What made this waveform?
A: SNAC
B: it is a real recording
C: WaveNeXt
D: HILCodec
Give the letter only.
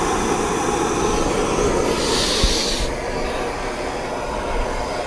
B